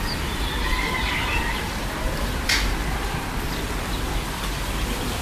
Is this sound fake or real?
fake